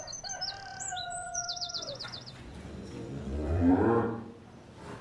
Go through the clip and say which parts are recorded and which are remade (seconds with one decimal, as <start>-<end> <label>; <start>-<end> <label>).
0.0-0.7 recorded; 0.7-3.7 remade; 3.7-5.0 recorded